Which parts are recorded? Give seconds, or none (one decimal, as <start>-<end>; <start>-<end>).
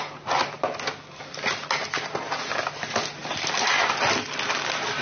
0.0-5.0